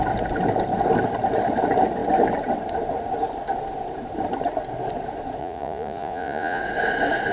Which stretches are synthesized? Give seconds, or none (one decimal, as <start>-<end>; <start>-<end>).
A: 5.4-6.6